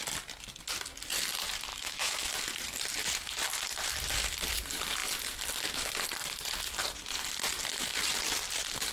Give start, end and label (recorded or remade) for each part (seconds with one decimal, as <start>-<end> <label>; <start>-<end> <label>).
0.0-1.7 recorded; 1.7-2.3 remade; 2.3-8.9 recorded